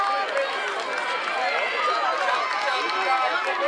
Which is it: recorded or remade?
recorded